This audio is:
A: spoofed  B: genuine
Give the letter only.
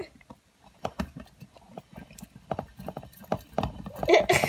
B